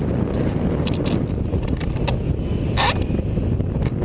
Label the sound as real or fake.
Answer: real